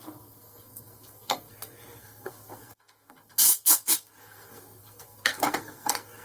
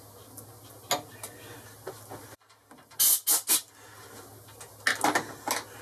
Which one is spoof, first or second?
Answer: first